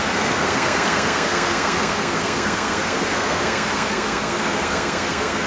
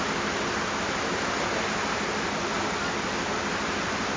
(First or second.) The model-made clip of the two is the first